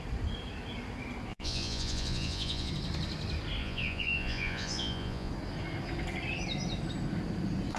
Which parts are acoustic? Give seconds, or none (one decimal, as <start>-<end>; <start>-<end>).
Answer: 0.0-1.3; 2.7-3.6; 5.3-7.8